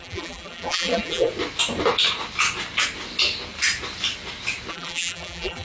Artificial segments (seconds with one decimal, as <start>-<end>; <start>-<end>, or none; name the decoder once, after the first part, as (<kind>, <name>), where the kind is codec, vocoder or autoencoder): 0.0-1.3 (vocoder, BigVGAN v2); 4.7-5.6